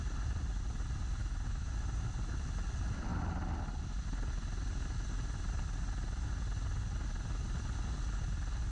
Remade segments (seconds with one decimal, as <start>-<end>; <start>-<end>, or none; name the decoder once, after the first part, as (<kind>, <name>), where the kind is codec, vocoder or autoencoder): 1.2-1.7 (autoencoder, DAC-VAE)